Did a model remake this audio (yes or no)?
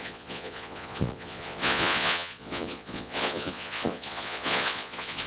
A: yes